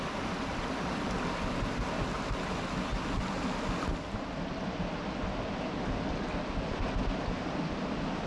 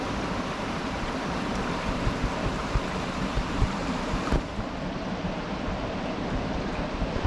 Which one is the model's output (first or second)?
second